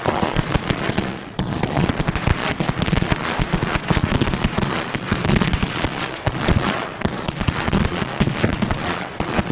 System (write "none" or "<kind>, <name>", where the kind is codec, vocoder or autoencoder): vocoder, Vocos